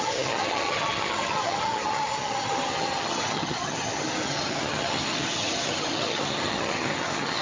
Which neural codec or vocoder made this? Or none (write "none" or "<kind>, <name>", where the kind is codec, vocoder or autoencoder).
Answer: vocoder, HiFi-GAN